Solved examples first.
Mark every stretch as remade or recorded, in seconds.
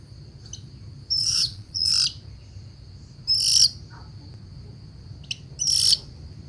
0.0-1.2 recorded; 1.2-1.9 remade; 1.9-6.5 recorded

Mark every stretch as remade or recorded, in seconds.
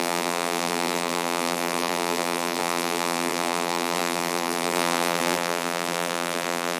0.0-6.8 remade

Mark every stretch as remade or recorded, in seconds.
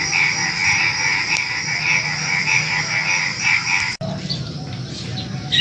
0.0-5.6 recorded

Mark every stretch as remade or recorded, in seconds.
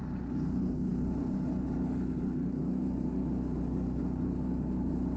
0.0-5.2 recorded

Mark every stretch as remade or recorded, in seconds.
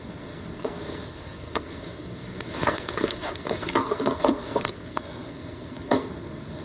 0.0-6.6 remade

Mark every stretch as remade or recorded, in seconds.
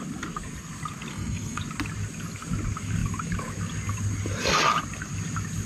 0.0-1.1 recorded; 1.1-1.6 remade; 1.6-5.7 recorded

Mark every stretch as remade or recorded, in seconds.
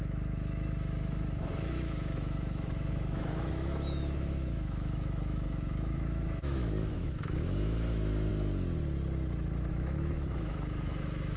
0.0-8.3 remade; 8.3-9.7 recorded; 9.7-11.4 remade